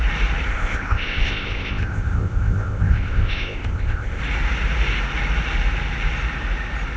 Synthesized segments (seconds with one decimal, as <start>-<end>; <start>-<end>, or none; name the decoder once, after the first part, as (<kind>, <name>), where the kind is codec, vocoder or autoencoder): 0.5-4.2 (codec, ZipCodec)